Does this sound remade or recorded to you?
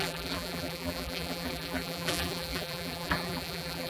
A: remade